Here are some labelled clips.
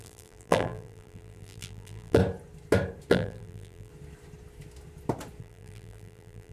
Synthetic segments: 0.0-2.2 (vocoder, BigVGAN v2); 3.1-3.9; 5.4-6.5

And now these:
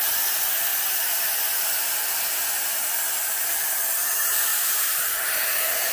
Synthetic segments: 0.0-2.4 (vocoder, BigVGAN v2); 3.2-5.9